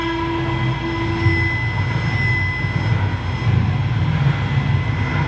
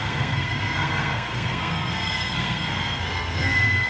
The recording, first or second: first